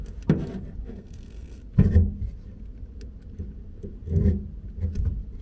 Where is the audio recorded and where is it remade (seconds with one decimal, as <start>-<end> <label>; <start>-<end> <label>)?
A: 0.0-0.9 recorded; 0.9-1.6 remade; 1.6-5.4 recorded